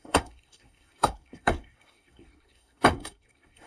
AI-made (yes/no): yes